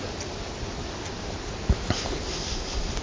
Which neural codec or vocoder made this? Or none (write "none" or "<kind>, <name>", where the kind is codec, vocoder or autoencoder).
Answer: none